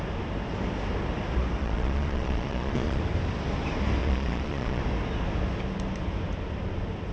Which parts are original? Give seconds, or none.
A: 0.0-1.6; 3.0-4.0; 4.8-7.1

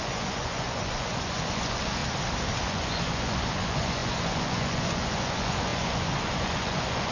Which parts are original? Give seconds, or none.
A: 2.0-2.6

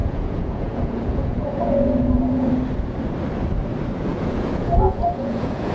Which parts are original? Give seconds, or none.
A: 2.5-4.1